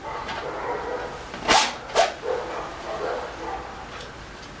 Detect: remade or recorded recorded